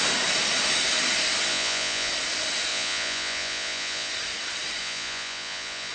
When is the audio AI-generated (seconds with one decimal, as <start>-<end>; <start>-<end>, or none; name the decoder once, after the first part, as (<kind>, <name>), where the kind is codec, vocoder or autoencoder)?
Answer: 1.5-2.1 (vocoder, Vocos); 2.7-4.1; 4.8-5.9